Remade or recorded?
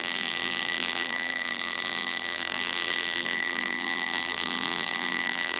remade